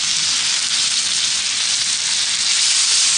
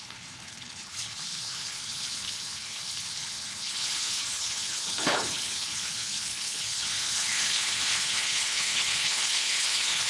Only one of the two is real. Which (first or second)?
first